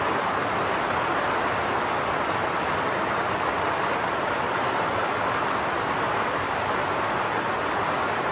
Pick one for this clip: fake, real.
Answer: real